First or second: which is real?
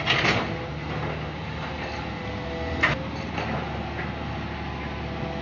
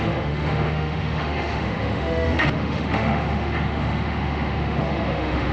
first